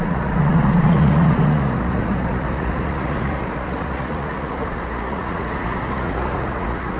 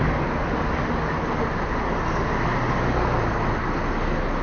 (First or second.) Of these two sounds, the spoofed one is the first